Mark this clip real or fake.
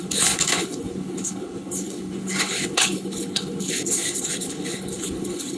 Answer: fake